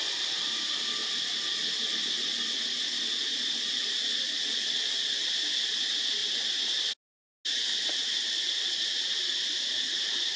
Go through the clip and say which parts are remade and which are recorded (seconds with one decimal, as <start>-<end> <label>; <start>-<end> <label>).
0.0-1.0 recorded; 1.0-5.4 remade; 5.4-10.4 recorded